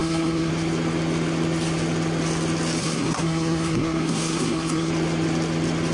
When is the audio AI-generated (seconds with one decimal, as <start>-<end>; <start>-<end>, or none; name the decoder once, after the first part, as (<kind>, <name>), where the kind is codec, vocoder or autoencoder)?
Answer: 0.0-0.5 (codec, SNAC); 2.8-4.9